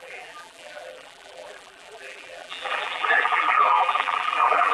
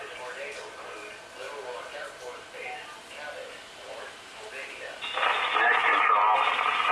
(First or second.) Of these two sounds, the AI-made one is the first